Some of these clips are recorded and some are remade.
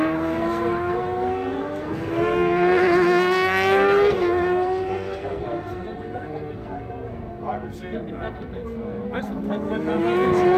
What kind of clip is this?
remade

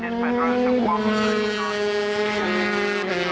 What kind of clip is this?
recorded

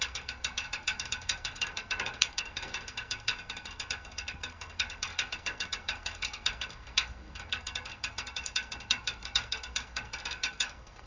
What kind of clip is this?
remade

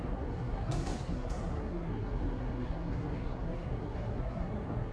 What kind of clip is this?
remade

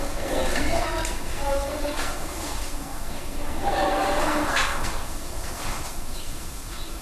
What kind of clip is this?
remade